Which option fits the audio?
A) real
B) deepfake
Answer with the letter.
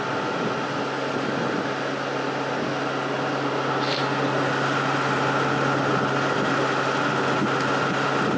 A